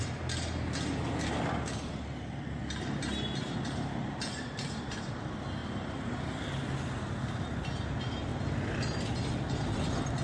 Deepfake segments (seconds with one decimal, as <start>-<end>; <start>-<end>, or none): 5.6-6.1

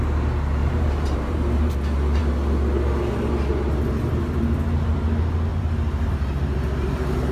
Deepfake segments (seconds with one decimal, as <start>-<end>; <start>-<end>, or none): 0.6-1.7; 5.5-6.1

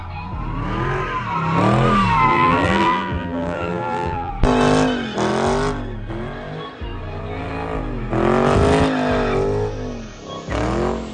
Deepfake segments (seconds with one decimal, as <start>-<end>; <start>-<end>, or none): 2.3-4.3

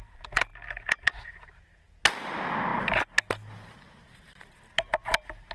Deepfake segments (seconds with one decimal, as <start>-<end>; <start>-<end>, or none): none

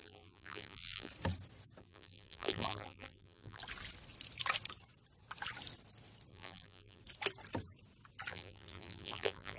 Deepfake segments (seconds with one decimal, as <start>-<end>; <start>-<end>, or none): 0.0-1.1; 1.8-3.6; 6.3-7.0; 8.3-9.6

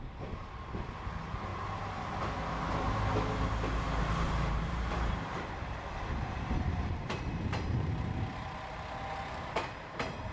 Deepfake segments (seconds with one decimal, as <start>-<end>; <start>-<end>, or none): 1.5-2.2; 4.0-7.9